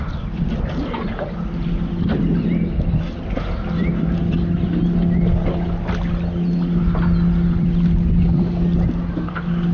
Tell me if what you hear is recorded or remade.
recorded